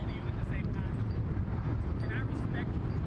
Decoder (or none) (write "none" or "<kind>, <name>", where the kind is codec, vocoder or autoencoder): none